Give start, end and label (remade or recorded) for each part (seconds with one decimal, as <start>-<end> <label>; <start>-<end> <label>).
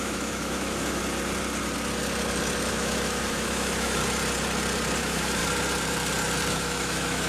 0.0-1.0 remade; 1.0-2.7 recorded; 2.7-4.0 remade; 4.0-5.0 recorded; 5.0-5.4 remade; 5.4-6.5 recorded; 6.5-7.3 remade